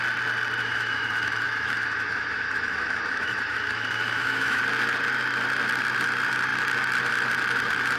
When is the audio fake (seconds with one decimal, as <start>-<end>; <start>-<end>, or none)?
0.6-4.6